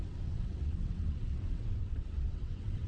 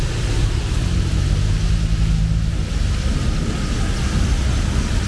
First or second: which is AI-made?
first